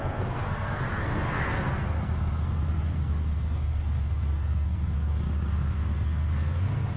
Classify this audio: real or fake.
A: fake